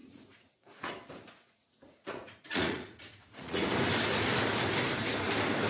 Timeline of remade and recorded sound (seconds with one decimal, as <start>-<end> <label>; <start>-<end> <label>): 0.0-0.9 remade; 0.9-2.0 recorded; 2.0-3.6 remade; 3.6-5.7 recorded